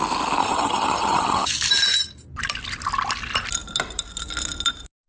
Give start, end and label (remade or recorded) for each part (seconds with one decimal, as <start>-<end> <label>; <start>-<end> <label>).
0.0-0.4 recorded; 0.4-1.5 remade; 1.5-5.1 recorded